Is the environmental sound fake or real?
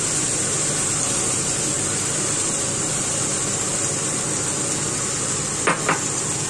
real